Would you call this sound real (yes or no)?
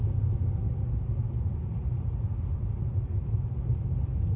yes